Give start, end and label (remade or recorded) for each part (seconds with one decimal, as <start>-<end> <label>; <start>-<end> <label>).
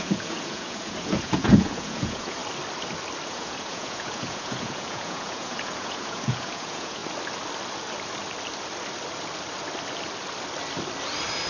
0.0-2.4 remade; 2.4-3.3 recorded; 3.3-7.0 remade; 7.0-11.5 recorded